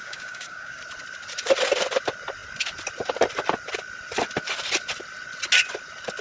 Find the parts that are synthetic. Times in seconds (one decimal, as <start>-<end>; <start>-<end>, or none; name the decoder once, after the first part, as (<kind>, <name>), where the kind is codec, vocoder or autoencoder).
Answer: 0.0-0.8 (codec, DAC)